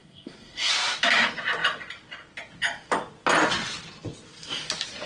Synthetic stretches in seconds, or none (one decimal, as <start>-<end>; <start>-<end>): 0.0-0.7